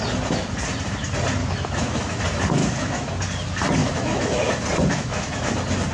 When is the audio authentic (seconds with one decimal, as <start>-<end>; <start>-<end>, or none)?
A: 0.0-1.4; 2.2-2.6; 3.1-3.8; 4.5-4.9; 5.5-5.9

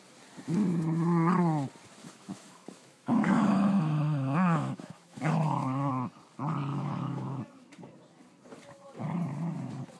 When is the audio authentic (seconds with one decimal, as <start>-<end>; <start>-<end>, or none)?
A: 0.0-2.0; 5.9-6.7; 7.4-10.0

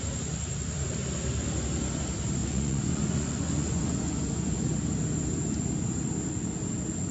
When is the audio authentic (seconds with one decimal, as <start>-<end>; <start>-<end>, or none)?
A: 0.0-2.4; 4.6-7.1

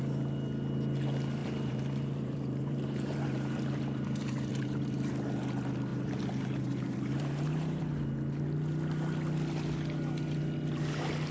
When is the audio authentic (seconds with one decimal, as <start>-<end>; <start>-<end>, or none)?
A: 0.0-1.4; 5.1-5.9; 7.8-11.3

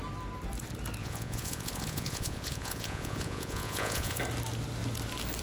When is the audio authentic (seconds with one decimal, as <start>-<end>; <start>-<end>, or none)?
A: 0.0-1.0; 4.2-5.4

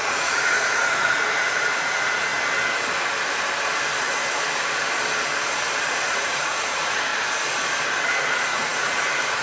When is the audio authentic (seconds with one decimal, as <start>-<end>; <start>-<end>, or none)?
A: 2.3-5.8; 7.1-8.2

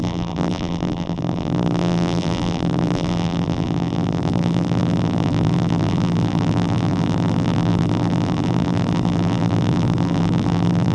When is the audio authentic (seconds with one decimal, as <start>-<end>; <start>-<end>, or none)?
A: none

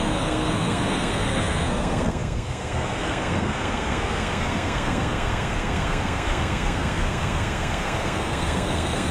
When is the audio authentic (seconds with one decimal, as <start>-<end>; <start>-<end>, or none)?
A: none